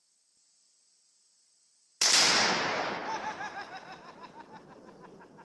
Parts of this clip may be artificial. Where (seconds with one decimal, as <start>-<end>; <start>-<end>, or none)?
3.0-4.9